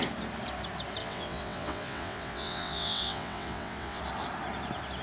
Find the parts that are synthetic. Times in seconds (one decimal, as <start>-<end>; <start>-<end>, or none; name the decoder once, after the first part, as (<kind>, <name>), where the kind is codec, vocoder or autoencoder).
1.0-4.0 (vocoder, WaveNeXt)